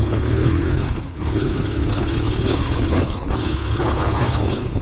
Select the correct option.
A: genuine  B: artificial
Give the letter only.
B